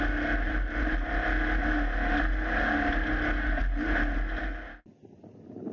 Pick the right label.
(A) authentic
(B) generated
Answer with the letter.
A